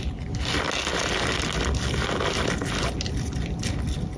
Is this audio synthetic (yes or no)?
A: no